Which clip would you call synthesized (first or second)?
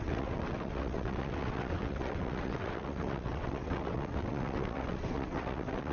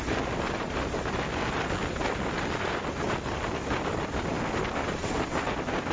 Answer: first